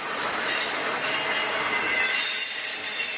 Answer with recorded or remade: recorded